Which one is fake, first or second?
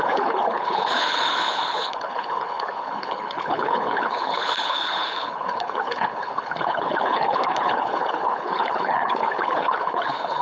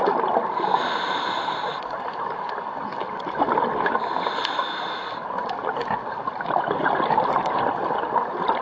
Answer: first